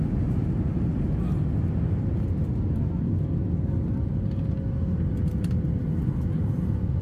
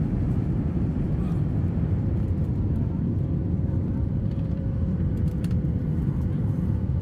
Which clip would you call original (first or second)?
first